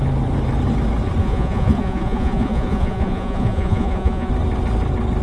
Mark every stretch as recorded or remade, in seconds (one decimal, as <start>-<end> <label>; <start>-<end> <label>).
0.0-1.2 recorded; 1.2-4.3 remade; 4.3-5.2 recorded